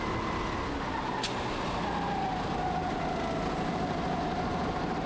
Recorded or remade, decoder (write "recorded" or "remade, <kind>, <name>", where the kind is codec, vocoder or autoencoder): recorded